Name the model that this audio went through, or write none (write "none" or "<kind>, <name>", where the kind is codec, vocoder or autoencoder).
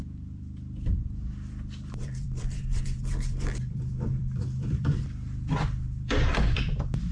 vocoder, BigVGAN v2